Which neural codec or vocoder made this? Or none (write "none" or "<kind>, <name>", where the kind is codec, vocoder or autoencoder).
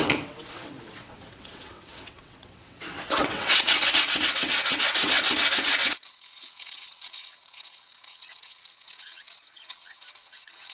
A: vocoder, WaveNeXt